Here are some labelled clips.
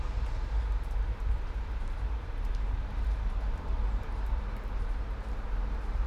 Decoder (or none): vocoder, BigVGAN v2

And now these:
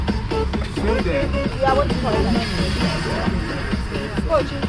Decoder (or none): none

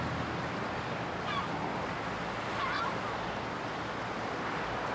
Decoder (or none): none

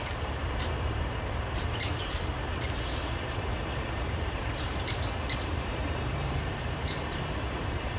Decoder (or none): vocoder, BigVGAN v2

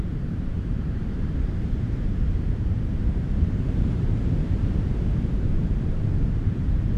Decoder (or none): vocoder, BigVGAN v2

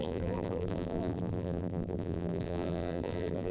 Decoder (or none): vocoder, BigVGAN v2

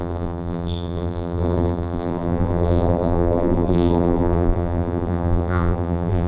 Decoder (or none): vocoder, BigVGAN v2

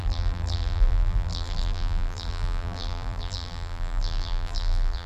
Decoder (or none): vocoder, BigVGAN v2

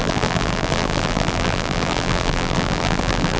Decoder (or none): vocoder, BigVGAN v2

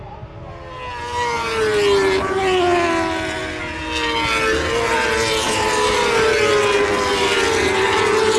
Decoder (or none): none